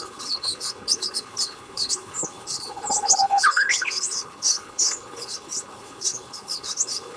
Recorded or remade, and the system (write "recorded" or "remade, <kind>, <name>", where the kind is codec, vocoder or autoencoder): remade, codec, HILCodec